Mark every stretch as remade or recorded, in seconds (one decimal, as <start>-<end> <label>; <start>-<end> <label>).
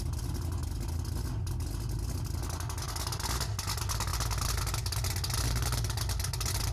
0.0-6.7 recorded